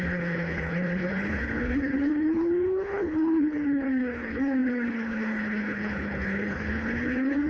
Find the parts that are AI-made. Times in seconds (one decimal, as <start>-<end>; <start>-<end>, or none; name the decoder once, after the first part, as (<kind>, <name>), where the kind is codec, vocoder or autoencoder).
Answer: 0.0-7.5 (codec, HILCodec)